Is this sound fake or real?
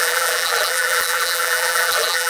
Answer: fake